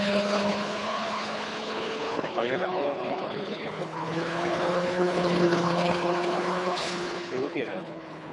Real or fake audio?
fake